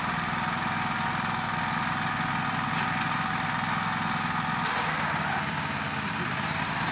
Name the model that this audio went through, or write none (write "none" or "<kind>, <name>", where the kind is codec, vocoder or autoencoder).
none